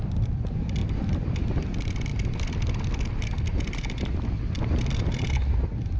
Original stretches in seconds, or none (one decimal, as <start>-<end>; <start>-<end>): 0.0-0.8; 1.4-3.5; 4.1-6.0